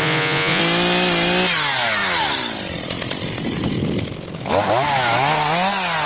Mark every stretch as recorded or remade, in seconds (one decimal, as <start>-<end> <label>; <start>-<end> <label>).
0.0-0.6 remade; 0.6-6.1 recorded